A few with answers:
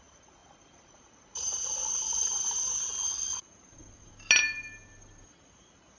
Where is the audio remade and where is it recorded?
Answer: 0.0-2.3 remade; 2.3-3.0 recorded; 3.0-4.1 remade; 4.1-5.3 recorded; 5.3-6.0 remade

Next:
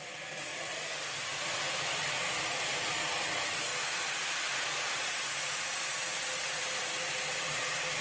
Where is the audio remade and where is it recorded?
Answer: 0.0-8.0 remade